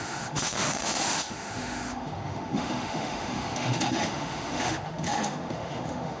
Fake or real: fake